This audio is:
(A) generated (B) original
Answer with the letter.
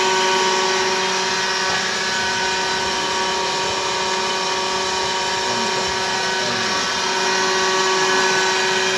B